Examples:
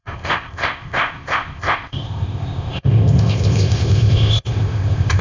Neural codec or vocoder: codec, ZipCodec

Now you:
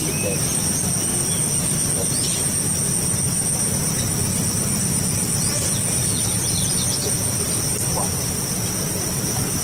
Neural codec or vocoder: none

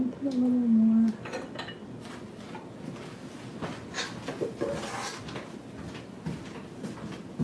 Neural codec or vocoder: none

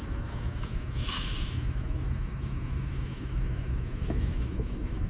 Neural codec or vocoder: autoencoder, DAC-VAE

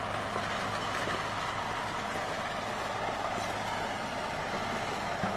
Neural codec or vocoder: none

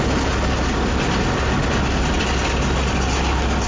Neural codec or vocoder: none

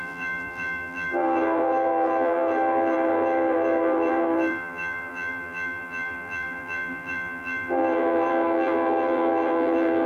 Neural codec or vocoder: vocoder, BigVGAN v2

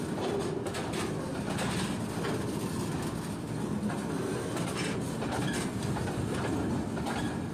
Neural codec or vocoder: none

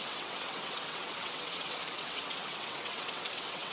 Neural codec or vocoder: vocoder, WaveNeXt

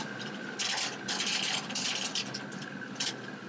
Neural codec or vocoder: vocoder, BigVGAN v2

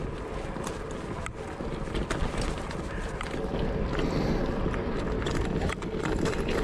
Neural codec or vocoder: none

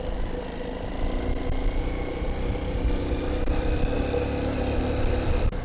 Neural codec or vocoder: none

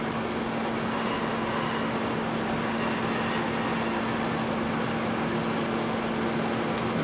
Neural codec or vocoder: none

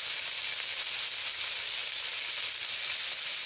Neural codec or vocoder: none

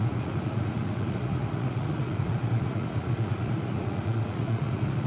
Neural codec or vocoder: vocoder, Vocos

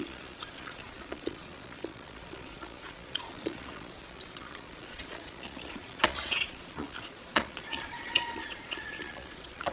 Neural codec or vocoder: vocoder, Vocos